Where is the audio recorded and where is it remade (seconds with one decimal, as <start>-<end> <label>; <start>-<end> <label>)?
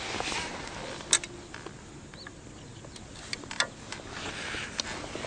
0.0-5.3 recorded